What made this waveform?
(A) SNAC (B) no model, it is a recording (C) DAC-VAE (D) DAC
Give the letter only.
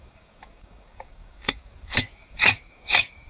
D